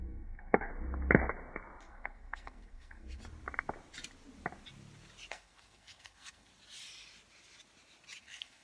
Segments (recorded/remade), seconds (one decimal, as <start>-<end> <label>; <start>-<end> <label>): 0.0-0.7 remade; 0.7-1.8 recorded; 1.8-3.2 remade; 3.2-5.3 recorded; 5.3-6.5 remade; 6.5-8.2 recorded; 8.2-8.6 remade